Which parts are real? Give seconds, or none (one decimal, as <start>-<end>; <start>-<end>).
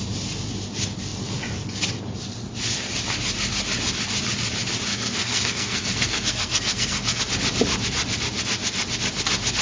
0.0-4.9; 7.2-9.6